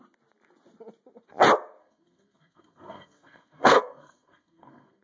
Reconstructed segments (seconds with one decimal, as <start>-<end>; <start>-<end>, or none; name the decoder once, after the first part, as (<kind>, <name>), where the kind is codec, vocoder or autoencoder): 1.8-5.0 (codec, SNAC)